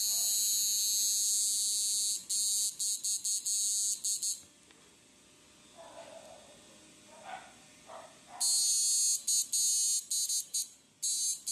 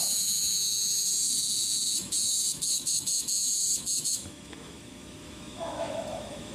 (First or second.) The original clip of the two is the first